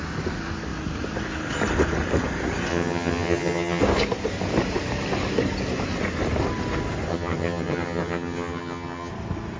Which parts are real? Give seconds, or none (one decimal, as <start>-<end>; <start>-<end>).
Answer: 0.0-2.7; 3.8-7.1; 9.1-9.6